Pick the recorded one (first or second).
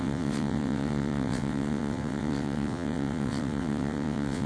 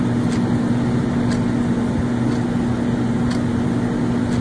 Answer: second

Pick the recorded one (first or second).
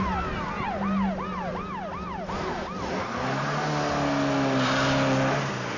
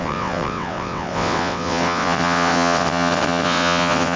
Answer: first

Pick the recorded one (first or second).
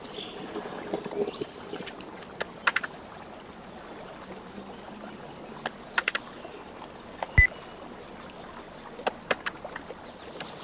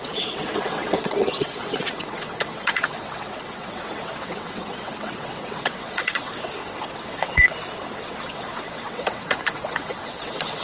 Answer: first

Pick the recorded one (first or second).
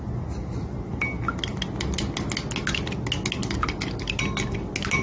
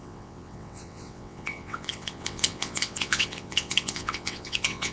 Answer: first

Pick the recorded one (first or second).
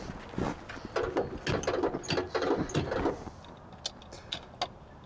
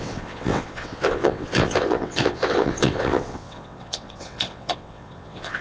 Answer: first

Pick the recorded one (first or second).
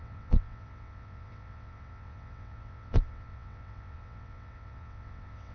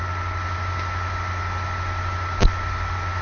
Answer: second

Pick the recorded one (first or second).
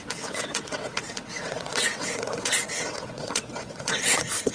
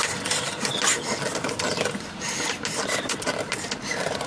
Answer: second